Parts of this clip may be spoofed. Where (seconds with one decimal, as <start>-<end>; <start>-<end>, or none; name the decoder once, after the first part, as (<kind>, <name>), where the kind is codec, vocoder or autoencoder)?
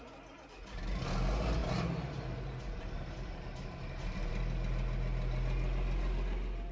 1.6-4.3 (vocoder, BigVGAN v2)